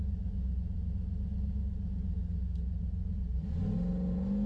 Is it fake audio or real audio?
real